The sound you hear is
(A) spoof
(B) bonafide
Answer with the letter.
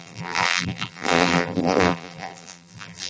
A